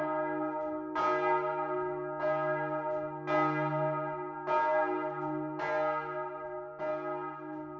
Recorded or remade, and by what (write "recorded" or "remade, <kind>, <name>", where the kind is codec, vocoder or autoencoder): recorded